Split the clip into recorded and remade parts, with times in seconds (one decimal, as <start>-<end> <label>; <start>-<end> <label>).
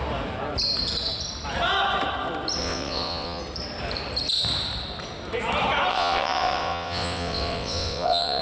0.0-2.6 recorded; 2.6-3.4 remade; 3.4-5.9 recorded; 5.9-8.4 remade